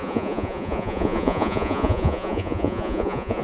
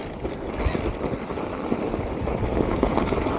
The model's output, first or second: first